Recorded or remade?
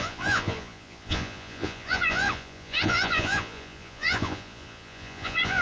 remade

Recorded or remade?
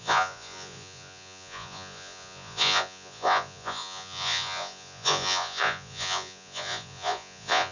remade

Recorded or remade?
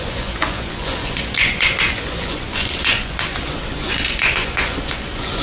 remade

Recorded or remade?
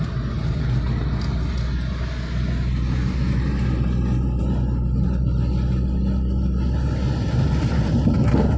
recorded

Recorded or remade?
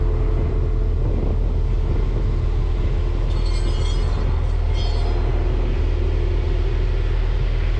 recorded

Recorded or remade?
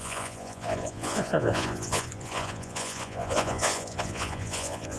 remade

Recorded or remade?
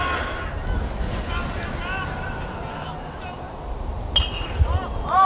recorded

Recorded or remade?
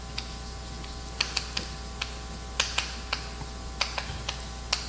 recorded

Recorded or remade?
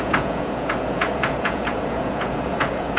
remade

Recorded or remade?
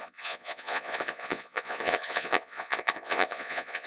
remade